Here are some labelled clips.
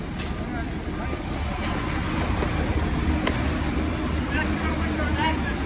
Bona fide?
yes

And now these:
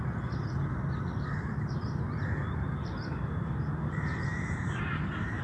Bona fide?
no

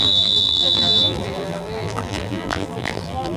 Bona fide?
no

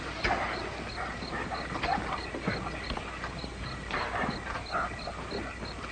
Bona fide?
yes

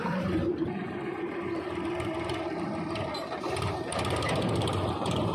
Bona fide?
no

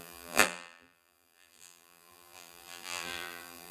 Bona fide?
no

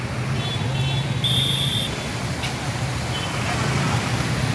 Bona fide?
yes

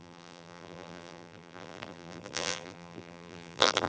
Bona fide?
no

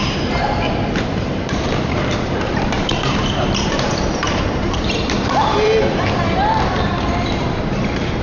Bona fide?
no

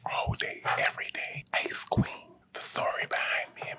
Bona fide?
yes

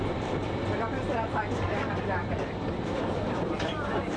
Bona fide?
no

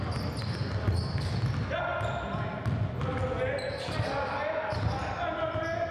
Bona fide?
yes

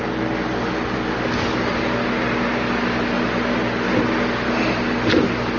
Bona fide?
yes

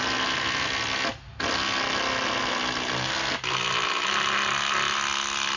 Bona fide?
yes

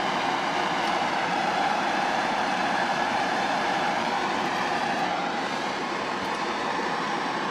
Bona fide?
no